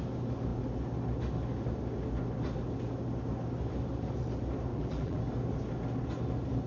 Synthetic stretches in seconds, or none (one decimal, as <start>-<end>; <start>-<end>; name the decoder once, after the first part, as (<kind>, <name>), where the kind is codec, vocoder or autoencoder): 4.7-5.2 (vocoder, BigVGAN v2)